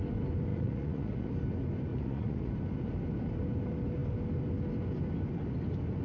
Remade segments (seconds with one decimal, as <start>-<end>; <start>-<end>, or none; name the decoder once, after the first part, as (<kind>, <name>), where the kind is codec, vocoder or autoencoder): 0.5-1.3 (vocoder, Vocos); 1.9-2.5